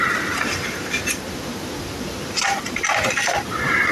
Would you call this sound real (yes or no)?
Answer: no